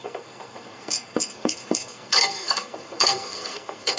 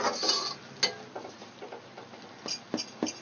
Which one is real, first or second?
second